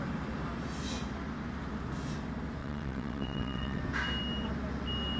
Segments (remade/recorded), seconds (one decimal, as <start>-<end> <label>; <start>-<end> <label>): 0.0-2.6 recorded; 2.6-3.8 remade; 3.8-5.2 recorded